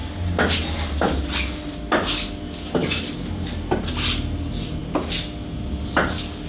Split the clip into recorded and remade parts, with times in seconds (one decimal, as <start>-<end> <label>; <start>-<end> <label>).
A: 0.0-6.5 recorded